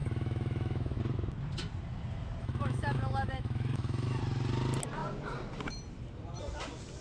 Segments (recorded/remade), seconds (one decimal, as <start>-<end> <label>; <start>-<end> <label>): 0.0-1.0 remade; 1.0-2.4 recorded; 2.4-4.2 remade; 4.2-7.0 recorded